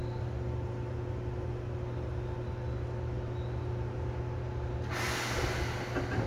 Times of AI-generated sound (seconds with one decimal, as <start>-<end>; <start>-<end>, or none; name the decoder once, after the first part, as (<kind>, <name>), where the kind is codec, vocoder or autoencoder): none